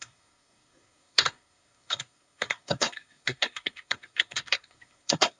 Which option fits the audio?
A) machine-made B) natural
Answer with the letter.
A